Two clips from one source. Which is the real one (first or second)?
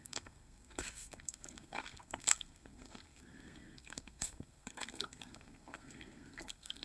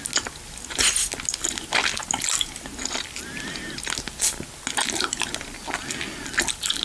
second